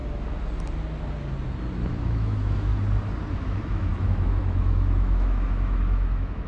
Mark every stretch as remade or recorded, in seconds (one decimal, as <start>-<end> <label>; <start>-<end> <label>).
0.0-1.9 recorded; 1.9-2.7 remade; 2.7-3.3 recorded; 3.3-6.5 remade

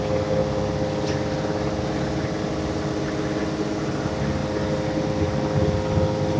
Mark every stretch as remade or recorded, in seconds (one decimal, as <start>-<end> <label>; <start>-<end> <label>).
0.0-6.4 recorded

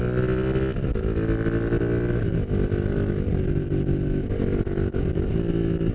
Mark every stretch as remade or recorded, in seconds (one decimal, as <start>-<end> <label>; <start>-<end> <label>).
0.0-5.9 recorded